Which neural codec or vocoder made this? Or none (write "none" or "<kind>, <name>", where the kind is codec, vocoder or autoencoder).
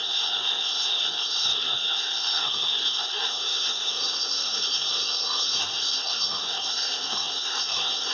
codec, SNAC